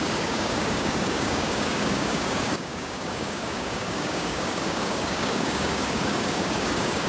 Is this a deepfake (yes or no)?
yes